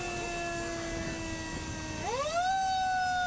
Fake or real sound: real